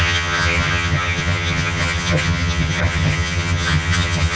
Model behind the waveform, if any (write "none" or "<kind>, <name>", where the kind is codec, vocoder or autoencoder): vocoder, HiFi-GAN